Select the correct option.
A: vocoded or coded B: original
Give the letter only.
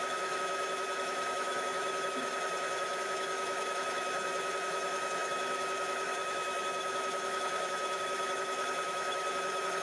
A